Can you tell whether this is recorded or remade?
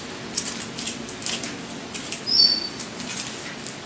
recorded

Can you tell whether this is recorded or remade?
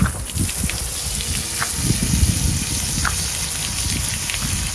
recorded